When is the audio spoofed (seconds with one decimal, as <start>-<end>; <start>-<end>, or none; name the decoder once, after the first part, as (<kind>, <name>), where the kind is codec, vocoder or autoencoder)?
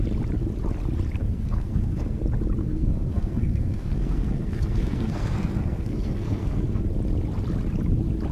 1.2-2.2 (codec, SNAC); 2.6-6.8